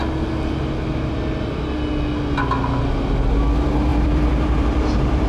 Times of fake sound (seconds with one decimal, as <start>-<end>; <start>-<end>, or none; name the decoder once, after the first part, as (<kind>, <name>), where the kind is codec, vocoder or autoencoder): 3.9-5.3 (vocoder, BigVGAN v2)